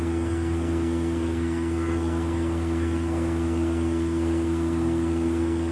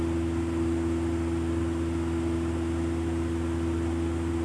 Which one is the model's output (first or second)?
first